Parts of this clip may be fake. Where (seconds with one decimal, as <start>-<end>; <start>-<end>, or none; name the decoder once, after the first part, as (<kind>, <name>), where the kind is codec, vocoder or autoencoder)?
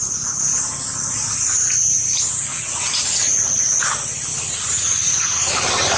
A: 2.5-3.9 (vocoder, Vocos)